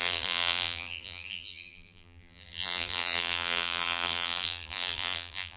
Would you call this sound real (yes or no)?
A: no